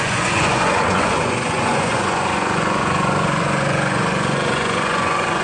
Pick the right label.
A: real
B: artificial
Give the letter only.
B